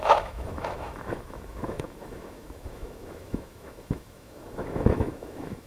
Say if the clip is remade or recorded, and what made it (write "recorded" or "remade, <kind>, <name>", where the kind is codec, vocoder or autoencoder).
remade, autoencoder, DAC-VAE